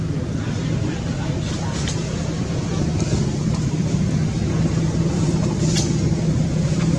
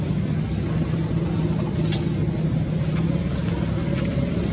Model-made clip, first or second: first